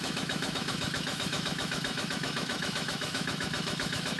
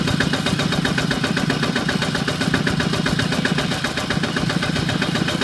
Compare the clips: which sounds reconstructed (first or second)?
first